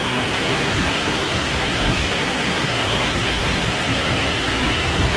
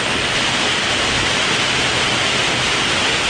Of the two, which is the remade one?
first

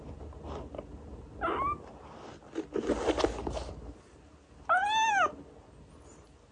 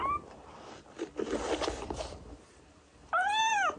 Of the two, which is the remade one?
second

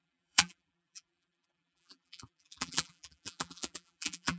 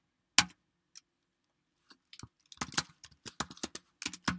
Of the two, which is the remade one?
first